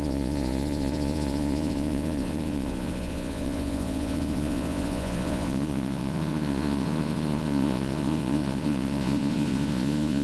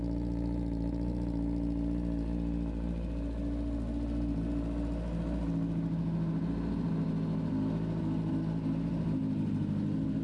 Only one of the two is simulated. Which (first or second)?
first